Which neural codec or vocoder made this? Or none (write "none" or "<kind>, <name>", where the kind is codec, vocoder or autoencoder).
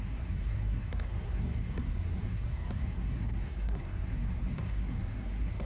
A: codec, SNAC